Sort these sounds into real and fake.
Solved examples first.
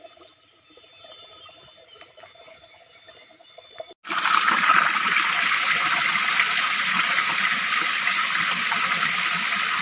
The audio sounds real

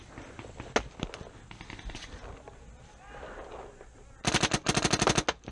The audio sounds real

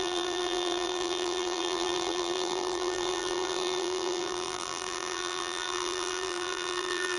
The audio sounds fake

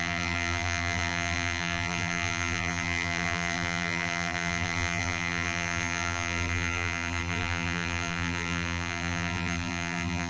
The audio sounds fake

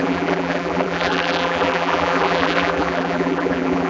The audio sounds fake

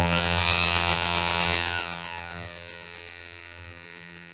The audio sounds fake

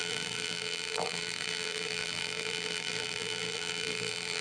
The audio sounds fake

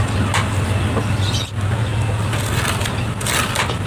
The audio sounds real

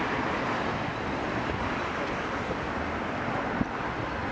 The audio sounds fake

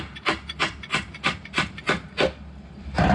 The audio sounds real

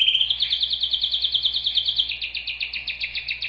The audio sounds real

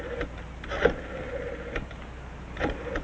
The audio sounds real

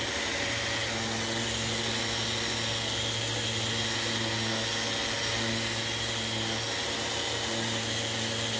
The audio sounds real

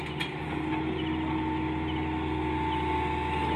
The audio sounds real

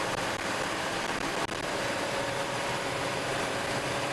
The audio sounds fake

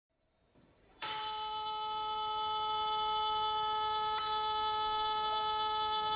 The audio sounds fake